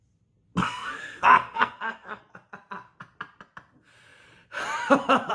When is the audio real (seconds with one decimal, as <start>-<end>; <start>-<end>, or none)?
0.0-0.6; 2.2-5.3